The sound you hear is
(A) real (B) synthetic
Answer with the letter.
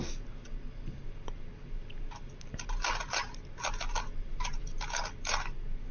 A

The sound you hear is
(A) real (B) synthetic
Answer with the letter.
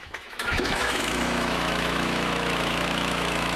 B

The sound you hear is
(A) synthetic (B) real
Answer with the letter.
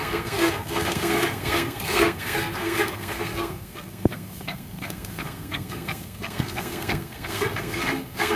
A